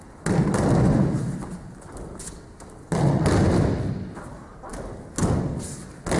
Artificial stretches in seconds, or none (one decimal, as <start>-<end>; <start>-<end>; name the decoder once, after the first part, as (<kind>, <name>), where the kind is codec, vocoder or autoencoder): none